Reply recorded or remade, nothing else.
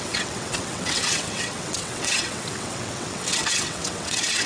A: remade